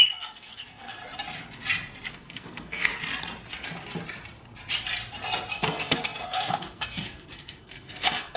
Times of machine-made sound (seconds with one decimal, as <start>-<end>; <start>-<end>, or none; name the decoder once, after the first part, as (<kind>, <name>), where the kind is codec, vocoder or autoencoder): 0.0-1.0 (codec, SNAC); 2.1-2.9; 5.5-8.4